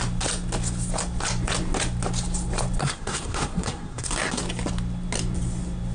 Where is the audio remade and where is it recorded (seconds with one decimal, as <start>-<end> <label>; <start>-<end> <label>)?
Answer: 0.0-2.8 recorded; 2.8-4.4 remade; 4.4-5.9 recorded